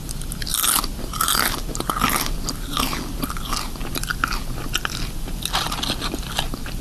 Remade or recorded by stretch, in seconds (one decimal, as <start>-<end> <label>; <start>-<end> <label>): 0.0-6.8 recorded